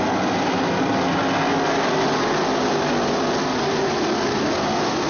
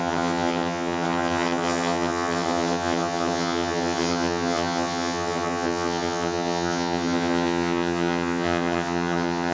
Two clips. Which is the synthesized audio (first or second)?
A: second